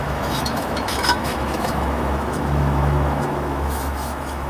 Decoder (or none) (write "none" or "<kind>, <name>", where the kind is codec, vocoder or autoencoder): autoencoder, DAC-VAE